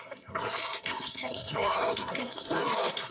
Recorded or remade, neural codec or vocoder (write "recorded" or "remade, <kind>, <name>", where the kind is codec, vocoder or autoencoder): remade, codec, SNAC